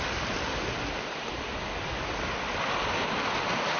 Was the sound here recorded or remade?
recorded